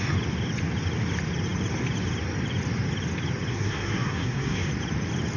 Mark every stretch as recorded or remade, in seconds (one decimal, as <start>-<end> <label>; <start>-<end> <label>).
0.0-3.5 recorded; 3.5-4.7 remade; 4.7-5.4 recorded